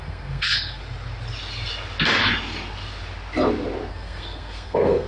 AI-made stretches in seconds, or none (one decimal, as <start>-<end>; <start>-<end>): 0.0-0.8; 3.9-5.1